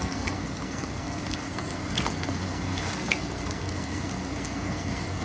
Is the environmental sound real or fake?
fake